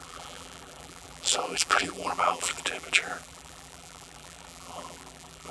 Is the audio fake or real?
fake